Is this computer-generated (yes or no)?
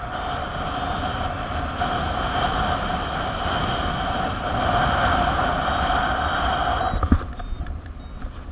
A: no